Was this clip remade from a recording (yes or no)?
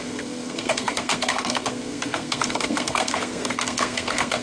yes